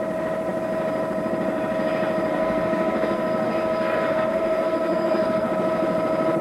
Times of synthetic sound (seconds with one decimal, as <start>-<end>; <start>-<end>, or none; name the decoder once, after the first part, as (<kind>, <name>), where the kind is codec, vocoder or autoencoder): 2.3-5.5 (codec, SNAC)